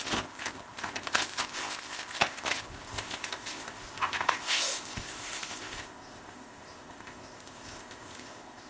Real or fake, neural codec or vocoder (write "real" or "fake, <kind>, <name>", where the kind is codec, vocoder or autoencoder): fake, codec, ZipCodec